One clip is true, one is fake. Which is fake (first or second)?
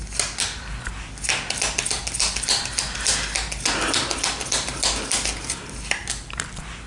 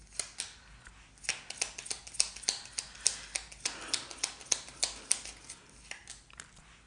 first